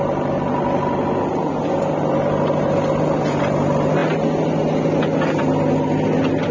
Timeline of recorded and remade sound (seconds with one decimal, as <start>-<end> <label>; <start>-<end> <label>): 0.0-6.5 recorded